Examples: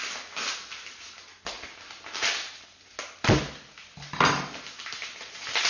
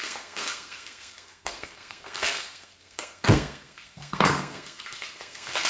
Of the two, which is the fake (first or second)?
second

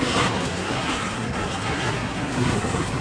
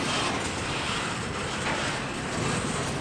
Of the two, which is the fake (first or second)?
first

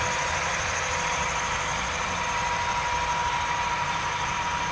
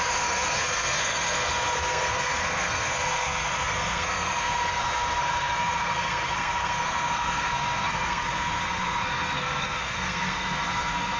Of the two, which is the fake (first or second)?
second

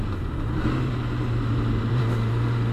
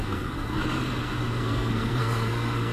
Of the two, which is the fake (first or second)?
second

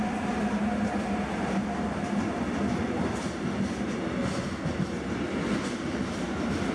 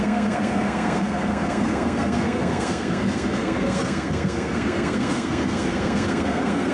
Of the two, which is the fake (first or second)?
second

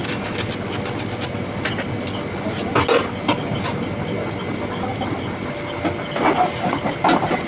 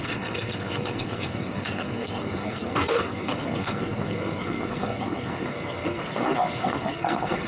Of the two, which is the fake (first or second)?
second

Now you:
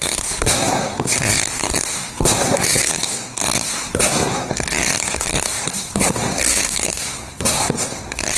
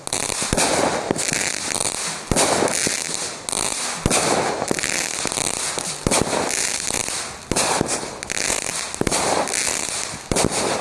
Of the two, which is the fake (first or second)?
first